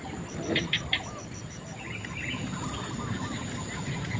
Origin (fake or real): real